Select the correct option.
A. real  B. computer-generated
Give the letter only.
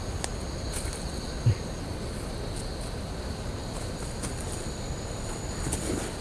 A